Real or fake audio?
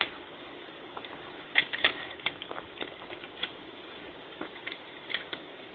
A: fake